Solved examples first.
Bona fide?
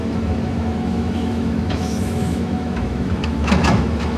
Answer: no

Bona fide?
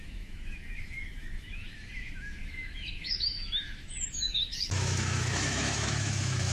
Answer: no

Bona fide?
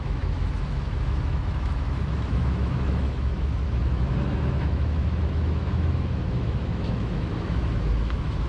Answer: no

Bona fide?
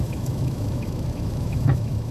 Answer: no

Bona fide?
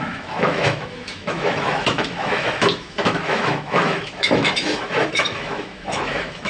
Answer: no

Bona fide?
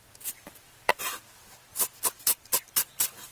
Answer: yes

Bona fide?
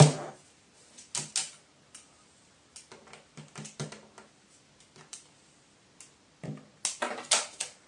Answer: yes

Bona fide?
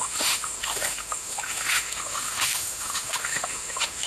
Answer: no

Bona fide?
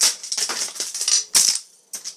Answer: yes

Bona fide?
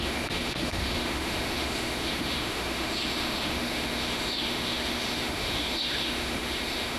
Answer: no